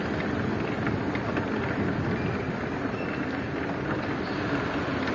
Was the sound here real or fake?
real